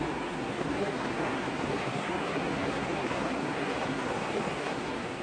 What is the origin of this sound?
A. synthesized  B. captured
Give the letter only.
A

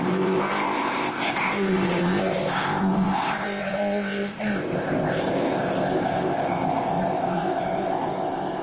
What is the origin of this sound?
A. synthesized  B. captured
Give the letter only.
A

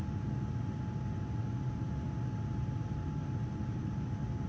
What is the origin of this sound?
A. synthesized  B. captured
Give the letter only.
B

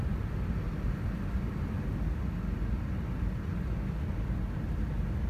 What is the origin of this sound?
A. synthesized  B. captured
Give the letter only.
B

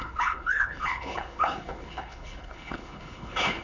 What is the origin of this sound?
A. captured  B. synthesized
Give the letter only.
B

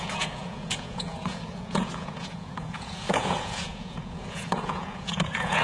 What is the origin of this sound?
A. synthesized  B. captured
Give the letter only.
A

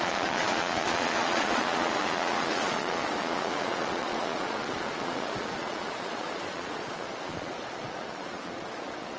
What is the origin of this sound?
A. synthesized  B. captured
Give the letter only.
A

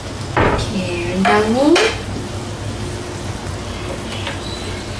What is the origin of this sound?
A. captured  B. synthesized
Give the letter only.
A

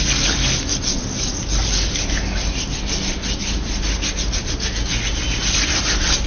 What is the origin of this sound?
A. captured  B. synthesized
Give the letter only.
A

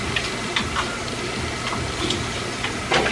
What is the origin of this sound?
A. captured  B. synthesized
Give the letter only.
A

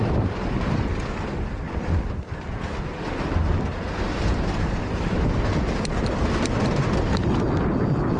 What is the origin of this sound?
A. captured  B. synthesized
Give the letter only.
A